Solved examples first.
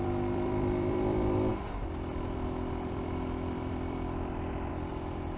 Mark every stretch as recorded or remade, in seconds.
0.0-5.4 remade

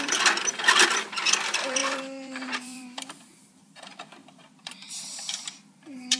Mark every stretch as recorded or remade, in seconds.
0.0-6.2 remade

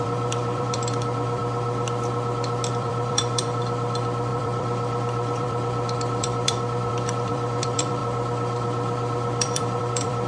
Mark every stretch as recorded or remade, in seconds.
0.0-1.4 remade; 1.4-2.7 recorded; 2.7-10.3 remade

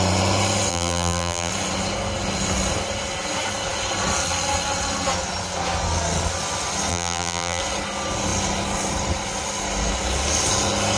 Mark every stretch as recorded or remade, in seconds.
0.0-0.7 recorded; 0.7-1.5 remade; 1.5-6.9 recorded; 6.9-7.6 remade; 7.6-11.0 recorded

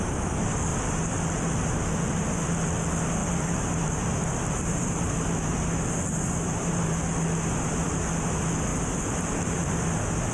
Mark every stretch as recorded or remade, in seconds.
0.0-3.2 recorded; 3.2-6.8 remade; 6.8-8.7 recorded; 8.7-10.3 remade

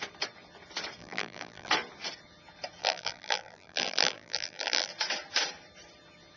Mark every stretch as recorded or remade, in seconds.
0.0-1.0 recorded; 1.0-1.7 remade; 1.7-2.8 recorded; 2.8-4.9 remade; 4.9-6.4 recorded

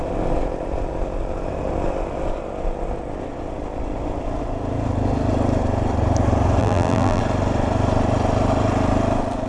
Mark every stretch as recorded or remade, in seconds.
0.0-6.6 recorded; 6.6-7.2 remade; 7.2-9.5 recorded

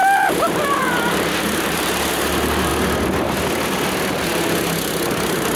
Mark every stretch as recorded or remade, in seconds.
0.0-2.7 remade; 2.7-5.1 recorded; 5.1-5.6 remade